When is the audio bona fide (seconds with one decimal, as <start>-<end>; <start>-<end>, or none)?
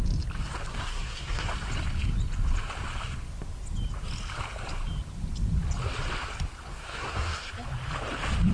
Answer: 0.0-0.7; 1.5-6.7; 7.5-8.5